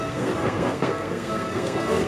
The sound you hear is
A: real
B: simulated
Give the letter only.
B